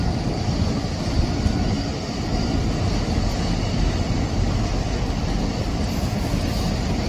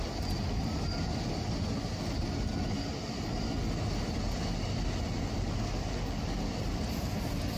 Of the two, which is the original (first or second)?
second